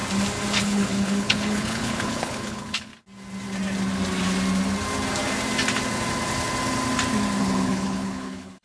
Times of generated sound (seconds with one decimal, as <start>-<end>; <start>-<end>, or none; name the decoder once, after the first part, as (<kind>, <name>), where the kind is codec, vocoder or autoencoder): 0.6-2.9 (codec, HILCodec); 7.4-8.6